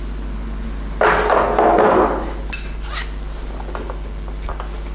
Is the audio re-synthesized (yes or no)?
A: no